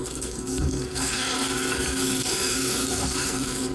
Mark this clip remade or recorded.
remade